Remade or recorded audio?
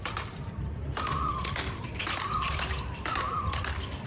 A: remade